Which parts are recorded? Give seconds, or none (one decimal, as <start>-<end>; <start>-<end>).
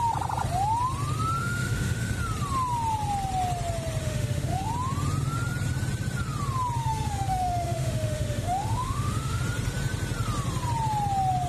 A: 0.0-1.4; 2.1-4.0; 4.7-6.8; 9.4-11.5